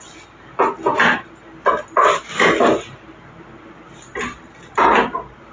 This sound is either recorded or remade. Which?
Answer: recorded